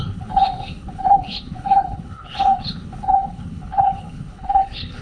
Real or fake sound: fake